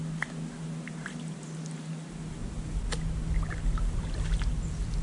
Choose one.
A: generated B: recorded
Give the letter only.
B